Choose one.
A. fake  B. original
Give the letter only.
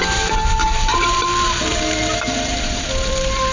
A